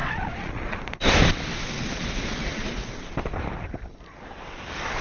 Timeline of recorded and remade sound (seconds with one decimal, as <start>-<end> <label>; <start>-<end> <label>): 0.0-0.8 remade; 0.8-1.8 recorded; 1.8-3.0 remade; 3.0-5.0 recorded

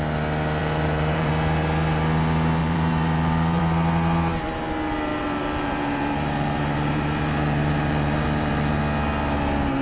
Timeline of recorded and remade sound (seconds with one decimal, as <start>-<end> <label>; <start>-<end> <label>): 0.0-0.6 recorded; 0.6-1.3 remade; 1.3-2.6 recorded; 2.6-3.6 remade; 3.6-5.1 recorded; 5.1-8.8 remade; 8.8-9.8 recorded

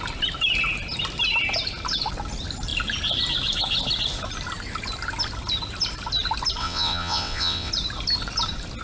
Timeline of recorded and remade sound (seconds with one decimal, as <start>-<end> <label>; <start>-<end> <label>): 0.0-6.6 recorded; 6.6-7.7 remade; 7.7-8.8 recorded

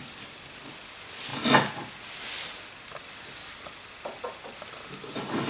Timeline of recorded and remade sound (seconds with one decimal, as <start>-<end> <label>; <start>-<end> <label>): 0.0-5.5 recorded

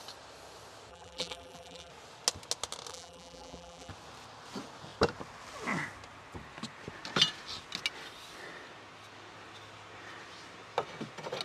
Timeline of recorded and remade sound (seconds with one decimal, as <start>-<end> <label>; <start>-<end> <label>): 0.0-0.9 recorded; 0.9-1.9 remade; 1.9-2.9 recorded; 2.9-3.9 remade; 3.9-11.4 recorded